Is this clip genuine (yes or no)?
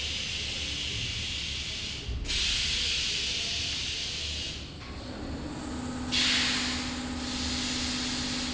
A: yes